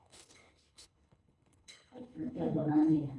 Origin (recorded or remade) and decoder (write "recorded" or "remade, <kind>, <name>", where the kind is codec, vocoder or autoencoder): remade, codec, HILCodec